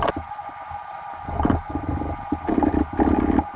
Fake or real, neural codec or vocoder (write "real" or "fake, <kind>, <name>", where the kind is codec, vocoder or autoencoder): real